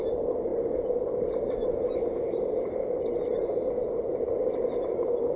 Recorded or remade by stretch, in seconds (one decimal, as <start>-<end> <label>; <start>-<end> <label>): 0.0-5.4 recorded